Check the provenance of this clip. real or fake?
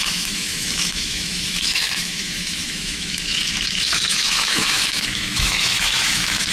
fake